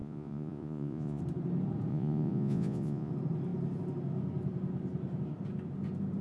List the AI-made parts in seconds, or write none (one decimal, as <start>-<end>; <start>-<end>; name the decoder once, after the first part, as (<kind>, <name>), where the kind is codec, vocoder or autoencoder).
0.0-1.2 (vocoder, Vocos); 1.9-3.1